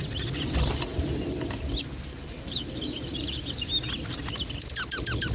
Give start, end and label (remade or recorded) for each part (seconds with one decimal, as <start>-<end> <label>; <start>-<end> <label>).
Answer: 0.0-0.9 recorded; 0.9-1.5 remade; 1.5-2.1 recorded; 2.1-3.9 remade; 3.9-5.3 recorded

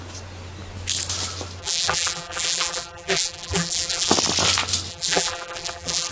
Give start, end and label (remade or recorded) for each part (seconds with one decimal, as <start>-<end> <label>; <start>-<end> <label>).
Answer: 0.0-1.6 recorded; 1.6-4.1 remade; 4.1-4.9 recorded; 4.9-6.1 remade

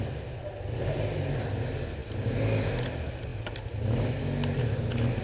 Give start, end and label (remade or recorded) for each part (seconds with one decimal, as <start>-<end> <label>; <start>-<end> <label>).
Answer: 0.0-5.2 recorded

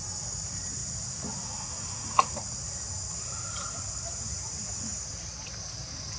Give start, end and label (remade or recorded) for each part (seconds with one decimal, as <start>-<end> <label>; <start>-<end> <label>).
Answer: 0.0-4.9 recorded; 4.9-5.5 remade; 5.5-6.2 recorded

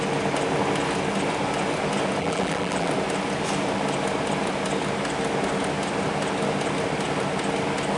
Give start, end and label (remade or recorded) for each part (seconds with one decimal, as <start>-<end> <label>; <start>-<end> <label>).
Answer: 0.0-2.2 recorded; 2.2-2.9 remade; 2.9-8.0 recorded

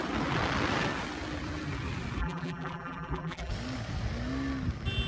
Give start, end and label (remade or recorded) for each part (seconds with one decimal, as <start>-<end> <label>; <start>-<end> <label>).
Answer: 0.0-2.2 recorded; 2.2-3.5 remade; 3.5-5.1 recorded